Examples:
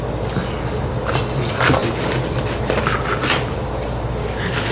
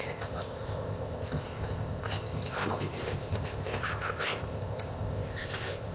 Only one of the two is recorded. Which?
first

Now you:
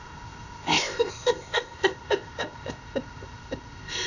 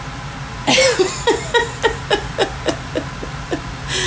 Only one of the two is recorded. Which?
second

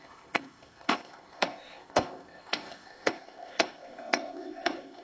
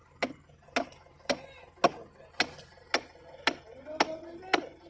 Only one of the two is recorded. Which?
second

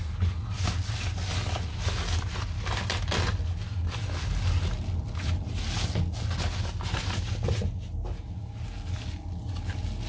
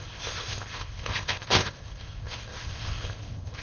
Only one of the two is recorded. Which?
first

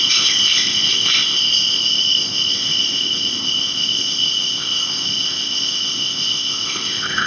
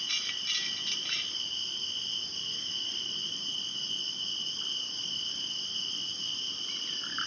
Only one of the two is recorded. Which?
second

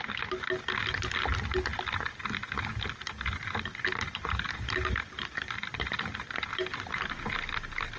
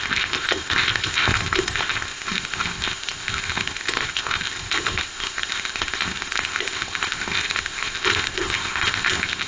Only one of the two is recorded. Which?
first